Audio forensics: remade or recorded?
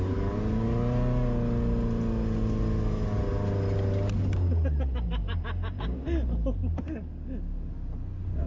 recorded